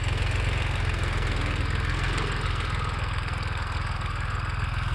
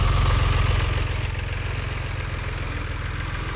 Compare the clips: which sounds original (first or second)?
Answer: second